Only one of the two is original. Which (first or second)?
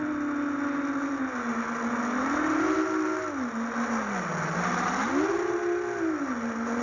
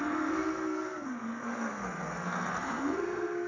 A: first